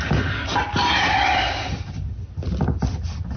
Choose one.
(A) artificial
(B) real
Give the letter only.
B